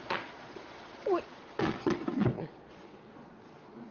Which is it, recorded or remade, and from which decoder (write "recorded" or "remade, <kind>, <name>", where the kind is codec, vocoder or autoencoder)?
remade, vocoder, Vocos